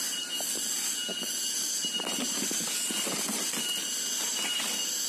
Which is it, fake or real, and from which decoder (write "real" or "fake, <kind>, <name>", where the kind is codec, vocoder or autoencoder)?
real